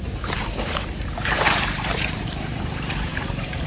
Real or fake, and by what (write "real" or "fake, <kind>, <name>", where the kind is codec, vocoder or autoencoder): fake, vocoder, BigVGAN v2